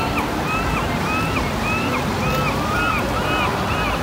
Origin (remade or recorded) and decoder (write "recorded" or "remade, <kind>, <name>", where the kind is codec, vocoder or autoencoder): recorded